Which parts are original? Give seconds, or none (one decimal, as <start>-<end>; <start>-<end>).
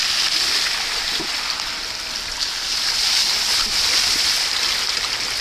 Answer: 0.0-5.4